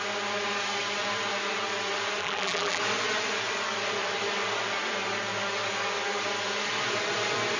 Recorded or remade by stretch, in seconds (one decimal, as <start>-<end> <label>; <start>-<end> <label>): 0.0-2.2 recorded; 2.2-2.8 remade; 2.8-7.6 recorded